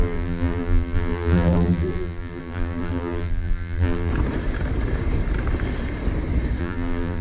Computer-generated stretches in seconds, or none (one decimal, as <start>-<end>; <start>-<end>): 0.0-4.1; 6.6-7.2